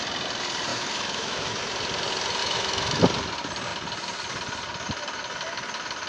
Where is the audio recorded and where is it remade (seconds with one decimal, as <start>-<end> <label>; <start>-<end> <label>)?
0.0-0.7 recorded; 0.7-1.6 remade; 1.6-2.4 recorded; 2.4-3.0 remade; 3.0-6.1 recorded